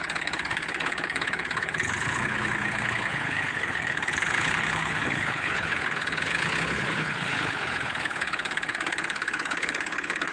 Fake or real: fake